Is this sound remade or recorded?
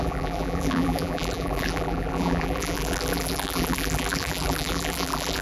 remade